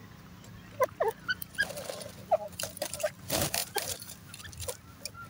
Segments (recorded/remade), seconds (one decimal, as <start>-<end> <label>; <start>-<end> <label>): 0.0-2.2 recorded; 2.2-3.2 remade; 3.2-3.6 recorded; 3.6-4.4 remade; 4.4-5.3 recorded